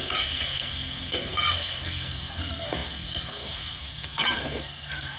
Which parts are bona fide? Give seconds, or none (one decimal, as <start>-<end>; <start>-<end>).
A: none